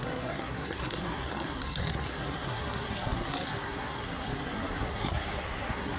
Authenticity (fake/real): fake